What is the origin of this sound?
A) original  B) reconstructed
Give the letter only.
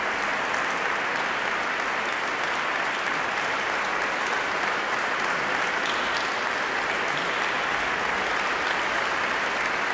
A